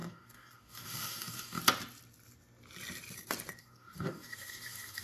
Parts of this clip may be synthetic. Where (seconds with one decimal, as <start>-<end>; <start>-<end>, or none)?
0.0-1.6; 3.6-5.0